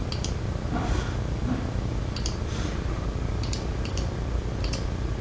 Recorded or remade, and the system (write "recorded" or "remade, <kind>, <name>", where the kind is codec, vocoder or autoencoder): remade, vocoder, BigVGAN v2